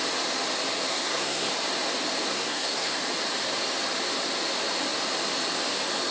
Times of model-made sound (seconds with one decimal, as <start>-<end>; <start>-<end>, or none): 0.9-1.5; 2.3-3.0